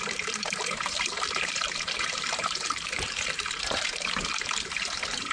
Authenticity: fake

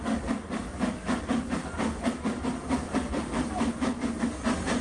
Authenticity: real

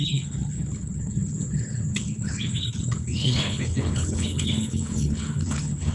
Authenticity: fake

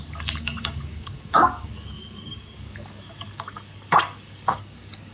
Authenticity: fake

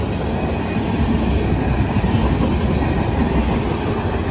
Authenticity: real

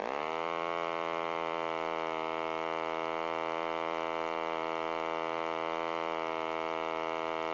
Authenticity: real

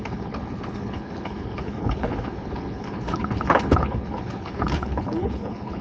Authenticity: fake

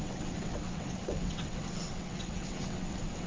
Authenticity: fake